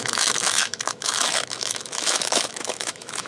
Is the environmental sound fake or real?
fake